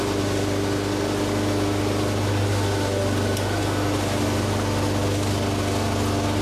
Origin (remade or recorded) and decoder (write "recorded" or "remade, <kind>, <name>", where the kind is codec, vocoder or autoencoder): recorded